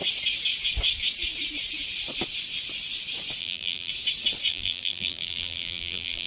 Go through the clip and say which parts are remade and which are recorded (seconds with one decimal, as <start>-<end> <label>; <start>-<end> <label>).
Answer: 0.0-3.4 recorded; 3.4-3.9 remade; 3.9-4.5 recorded; 4.5-6.3 remade